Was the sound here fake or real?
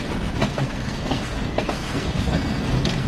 fake